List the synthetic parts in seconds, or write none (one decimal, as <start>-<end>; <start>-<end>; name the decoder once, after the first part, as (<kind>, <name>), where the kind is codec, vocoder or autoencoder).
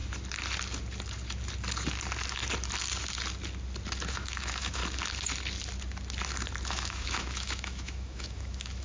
4.1-4.8 (autoencoder, DAC-VAE); 6.7-8.8